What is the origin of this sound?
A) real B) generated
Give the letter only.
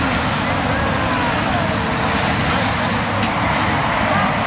A